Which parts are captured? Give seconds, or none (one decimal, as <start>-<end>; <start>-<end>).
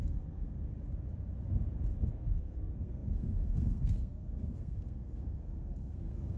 0.7-2.1